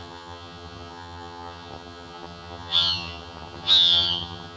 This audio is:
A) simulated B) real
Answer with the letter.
A